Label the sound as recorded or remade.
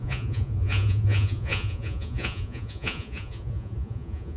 remade